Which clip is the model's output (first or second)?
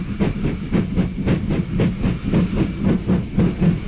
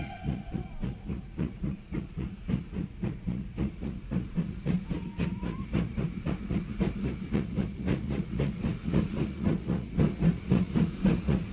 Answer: second